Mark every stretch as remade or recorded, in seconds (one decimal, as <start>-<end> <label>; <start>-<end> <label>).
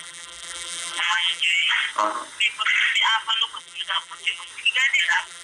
0.0-1.7 remade; 1.7-3.6 recorded; 3.6-4.5 remade; 4.5-5.0 recorded; 5.0-5.4 remade